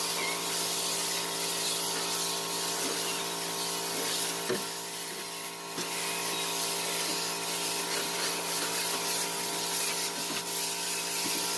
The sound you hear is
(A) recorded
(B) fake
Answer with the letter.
A